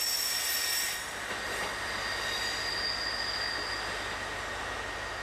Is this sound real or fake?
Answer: real